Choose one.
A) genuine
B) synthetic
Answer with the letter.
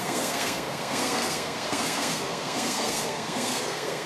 B